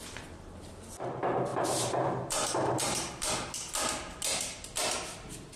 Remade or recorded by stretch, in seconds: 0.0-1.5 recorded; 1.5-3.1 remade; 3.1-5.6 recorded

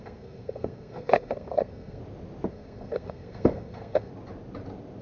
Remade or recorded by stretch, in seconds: 0.0-2.0 remade; 2.0-2.5 recorded; 2.5-4.1 remade; 4.1-5.0 recorded

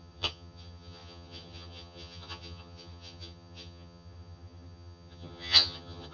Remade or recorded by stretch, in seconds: 0.0-6.1 remade

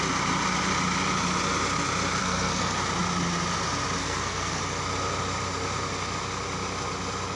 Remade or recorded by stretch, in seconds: 0.0-2.2 recorded; 2.2-2.8 remade; 2.8-4.0 recorded; 4.0-4.6 remade; 4.6-7.4 recorded

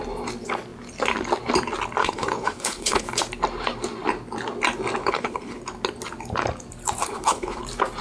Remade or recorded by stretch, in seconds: 0.0-2.0 recorded; 2.0-3.2 remade; 3.2-5.0 recorded; 5.0-5.6 remade; 5.6-7.0 recorded; 7.0-7.6 remade; 7.6-8.0 recorded

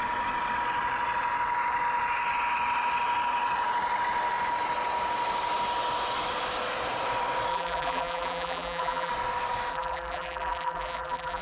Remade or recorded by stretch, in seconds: 0.0-7.5 recorded; 7.5-9.1 remade; 9.1-9.7 recorded; 9.7-11.4 remade

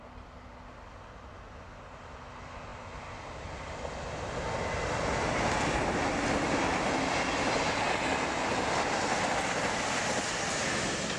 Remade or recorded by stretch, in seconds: 0.0-11.2 recorded